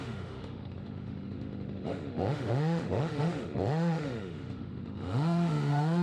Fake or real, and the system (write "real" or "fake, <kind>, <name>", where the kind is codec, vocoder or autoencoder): fake, autoencoder, DAC-VAE